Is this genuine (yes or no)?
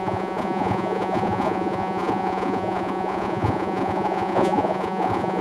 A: no